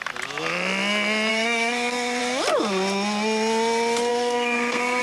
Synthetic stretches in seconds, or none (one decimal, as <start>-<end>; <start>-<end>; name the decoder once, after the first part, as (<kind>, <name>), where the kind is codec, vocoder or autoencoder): 1.3-2.2 (codec, SNAC); 4.1-5.0